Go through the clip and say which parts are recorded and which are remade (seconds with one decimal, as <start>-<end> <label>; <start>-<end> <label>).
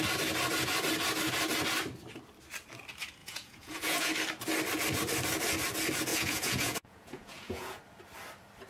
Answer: 0.0-3.2 recorded; 3.2-4.1 remade; 4.1-6.1 recorded; 6.1-7.8 remade; 7.8-8.7 recorded